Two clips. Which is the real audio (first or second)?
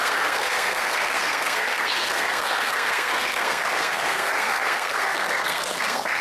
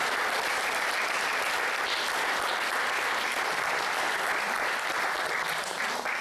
second